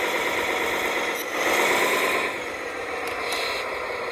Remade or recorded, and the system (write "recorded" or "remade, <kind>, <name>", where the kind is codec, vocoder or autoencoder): remade, vocoder, BigVGAN v2